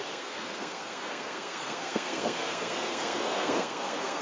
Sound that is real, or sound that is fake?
fake